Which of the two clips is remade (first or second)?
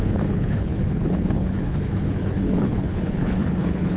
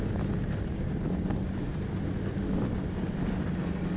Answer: first